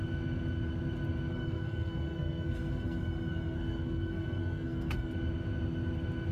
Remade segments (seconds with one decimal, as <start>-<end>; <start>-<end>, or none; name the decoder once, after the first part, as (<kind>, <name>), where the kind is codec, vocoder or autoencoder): 1.3-5.1 (codec, SNAC)